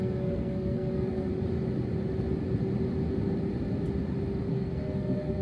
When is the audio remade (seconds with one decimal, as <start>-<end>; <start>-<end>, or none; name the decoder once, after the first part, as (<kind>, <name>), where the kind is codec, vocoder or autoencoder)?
0.0-1.3 (codec, SNAC); 4.5-5.4